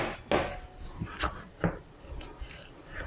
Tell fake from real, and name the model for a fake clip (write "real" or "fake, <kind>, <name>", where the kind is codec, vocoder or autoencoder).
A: real